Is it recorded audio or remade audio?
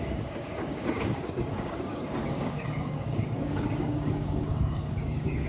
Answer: remade